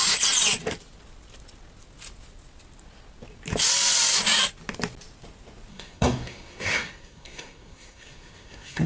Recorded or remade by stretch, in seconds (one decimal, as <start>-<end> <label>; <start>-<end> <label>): 0.0-5.7 recorded; 5.7-8.9 remade